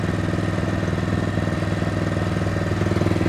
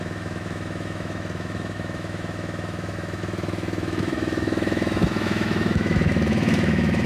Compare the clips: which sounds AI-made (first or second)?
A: second